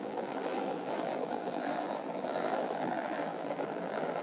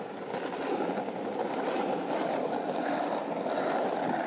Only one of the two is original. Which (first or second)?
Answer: second